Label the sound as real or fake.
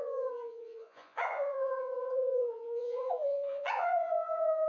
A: fake